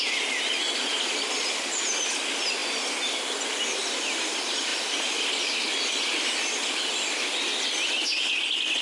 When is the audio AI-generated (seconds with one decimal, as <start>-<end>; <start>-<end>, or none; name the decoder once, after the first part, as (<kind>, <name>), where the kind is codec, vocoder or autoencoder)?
none